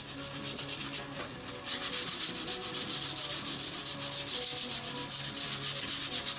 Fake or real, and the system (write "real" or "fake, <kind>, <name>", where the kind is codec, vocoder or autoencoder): real